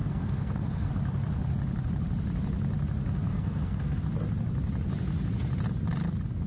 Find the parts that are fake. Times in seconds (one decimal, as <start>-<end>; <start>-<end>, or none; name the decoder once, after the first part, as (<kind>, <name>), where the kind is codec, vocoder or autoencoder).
0.0-0.9 (codec, SNAC); 3.3-4.0